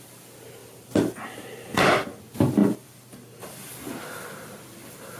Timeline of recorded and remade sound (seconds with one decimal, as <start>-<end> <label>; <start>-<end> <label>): 0.0-0.6 recorded; 0.6-2.2 remade; 2.2-2.6 recorded; 2.6-3.7 remade; 3.7-5.2 recorded